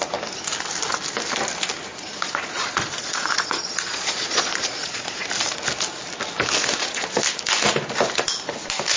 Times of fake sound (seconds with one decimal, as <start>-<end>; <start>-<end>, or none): 1.9-5.3; 6.6-7.2